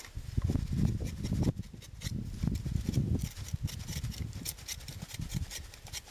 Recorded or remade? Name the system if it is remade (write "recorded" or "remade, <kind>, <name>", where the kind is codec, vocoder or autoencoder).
recorded